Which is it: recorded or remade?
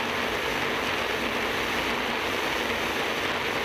recorded